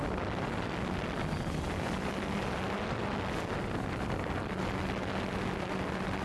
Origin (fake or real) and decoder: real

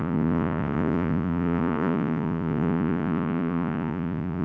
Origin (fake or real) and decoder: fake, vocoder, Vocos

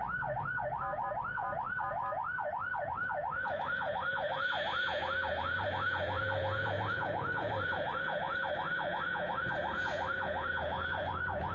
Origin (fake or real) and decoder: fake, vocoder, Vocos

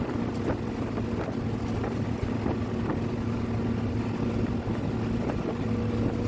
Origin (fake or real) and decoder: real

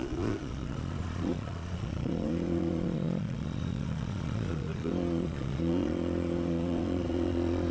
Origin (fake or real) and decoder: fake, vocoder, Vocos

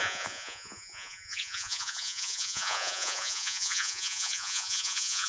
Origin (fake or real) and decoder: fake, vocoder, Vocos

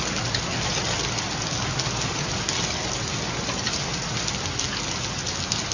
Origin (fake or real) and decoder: real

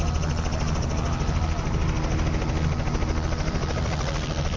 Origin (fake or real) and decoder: real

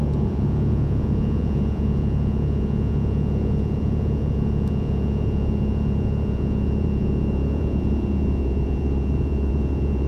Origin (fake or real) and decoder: fake, vocoder, Vocos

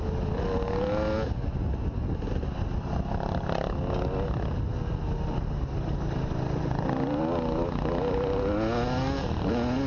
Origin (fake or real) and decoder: real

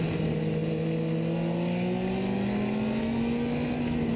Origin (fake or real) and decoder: real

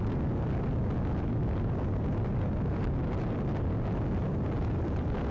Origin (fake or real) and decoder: real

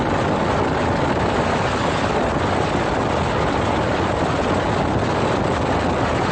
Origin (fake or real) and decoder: real